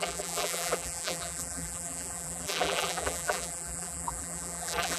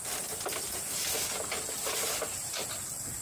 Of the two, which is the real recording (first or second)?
second